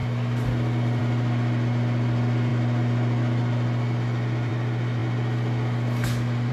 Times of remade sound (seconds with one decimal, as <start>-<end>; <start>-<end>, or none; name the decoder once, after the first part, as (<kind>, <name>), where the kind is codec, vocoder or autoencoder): none